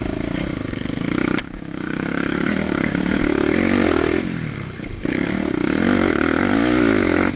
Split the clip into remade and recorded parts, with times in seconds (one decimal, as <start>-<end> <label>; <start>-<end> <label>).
0.0-1.4 recorded; 1.4-3.2 remade; 3.2-7.4 recorded